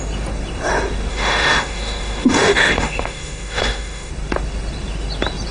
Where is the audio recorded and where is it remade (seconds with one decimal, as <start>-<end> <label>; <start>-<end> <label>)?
0.0-1.1 recorded; 1.1-4.1 remade; 4.1-5.5 recorded